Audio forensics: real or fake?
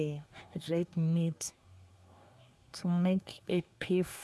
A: fake